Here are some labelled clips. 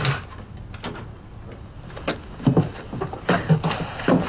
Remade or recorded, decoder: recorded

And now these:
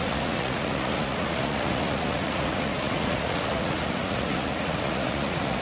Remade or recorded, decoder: remade, vocoder, Vocos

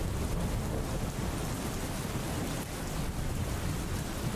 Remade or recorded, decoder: remade, vocoder, BigVGAN v2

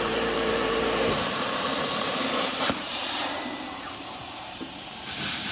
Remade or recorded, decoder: remade, vocoder, BigVGAN v2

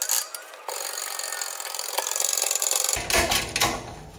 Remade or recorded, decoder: recorded